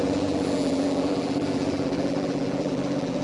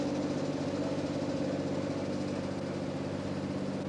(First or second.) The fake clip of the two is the first